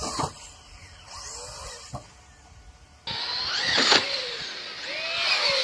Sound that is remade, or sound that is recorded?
recorded